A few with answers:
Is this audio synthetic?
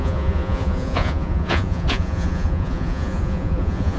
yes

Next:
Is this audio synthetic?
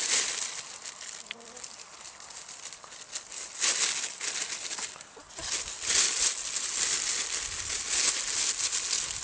no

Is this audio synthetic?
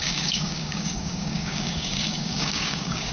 yes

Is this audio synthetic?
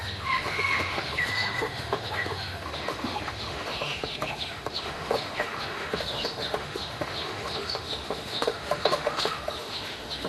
yes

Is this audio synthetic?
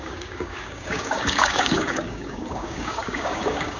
yes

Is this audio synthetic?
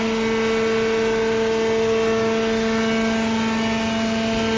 no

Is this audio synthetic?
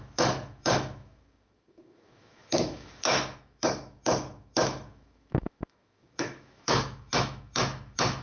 yes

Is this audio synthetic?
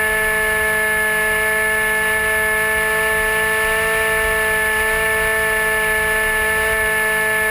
no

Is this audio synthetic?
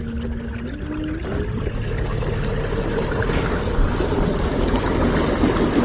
no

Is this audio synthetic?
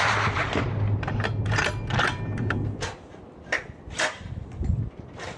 yes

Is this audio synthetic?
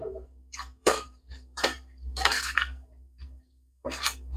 yes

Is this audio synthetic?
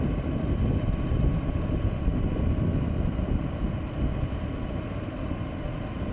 no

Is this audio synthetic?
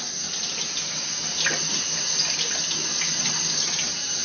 no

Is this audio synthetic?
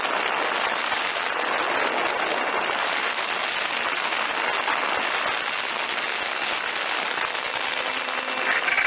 no